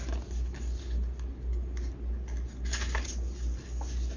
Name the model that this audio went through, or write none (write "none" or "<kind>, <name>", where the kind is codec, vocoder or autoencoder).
none